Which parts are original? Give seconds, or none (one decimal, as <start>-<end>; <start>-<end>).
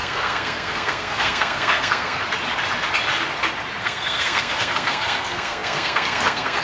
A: 2.2-3.8